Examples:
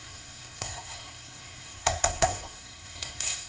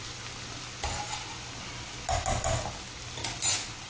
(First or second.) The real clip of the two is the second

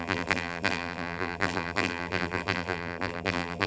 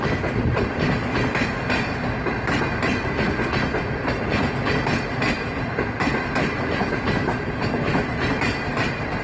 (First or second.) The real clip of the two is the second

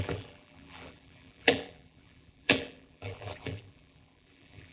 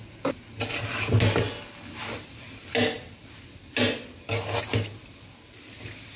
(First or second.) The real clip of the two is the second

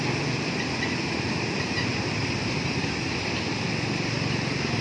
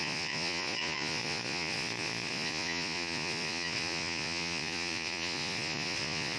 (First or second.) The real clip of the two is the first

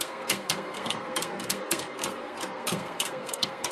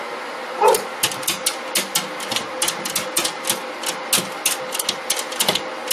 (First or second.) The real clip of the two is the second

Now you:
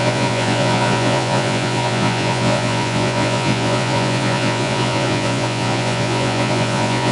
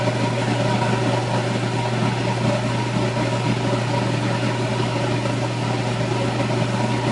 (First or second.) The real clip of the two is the second